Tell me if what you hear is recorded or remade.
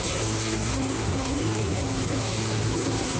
remade